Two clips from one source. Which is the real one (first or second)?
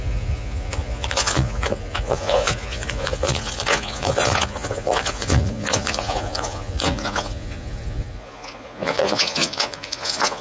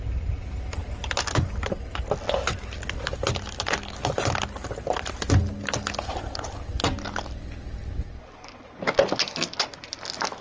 second